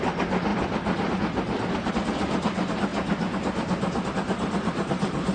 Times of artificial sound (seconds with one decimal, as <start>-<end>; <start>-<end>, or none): none